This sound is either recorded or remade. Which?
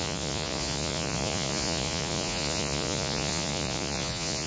remade